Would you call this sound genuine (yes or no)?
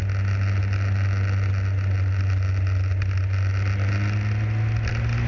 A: yes